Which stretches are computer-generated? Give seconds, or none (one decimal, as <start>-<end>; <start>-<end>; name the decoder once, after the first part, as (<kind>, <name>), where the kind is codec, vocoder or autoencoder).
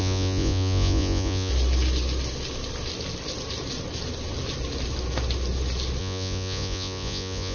0.0-1.5 (vocoder, Vocos); 6.0-7.5